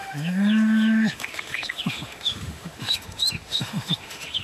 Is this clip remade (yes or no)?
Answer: yes